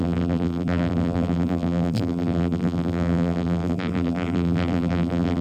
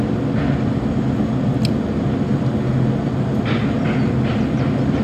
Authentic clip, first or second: second